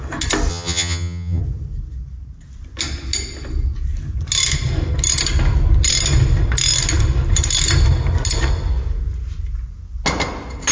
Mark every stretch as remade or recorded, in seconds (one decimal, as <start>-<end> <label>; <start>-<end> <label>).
0.0-0.5 recorded; 0.5-1.4 remade; 1.4-10.7 recorded